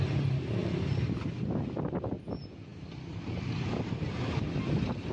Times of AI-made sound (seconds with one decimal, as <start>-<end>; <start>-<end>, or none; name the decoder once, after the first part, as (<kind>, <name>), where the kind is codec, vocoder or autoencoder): none